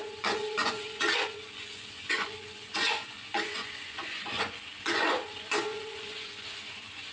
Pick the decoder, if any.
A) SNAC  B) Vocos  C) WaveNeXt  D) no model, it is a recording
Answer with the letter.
B